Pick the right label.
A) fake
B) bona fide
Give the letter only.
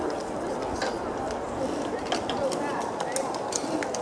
B